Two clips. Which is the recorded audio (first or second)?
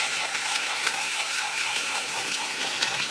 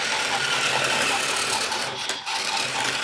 second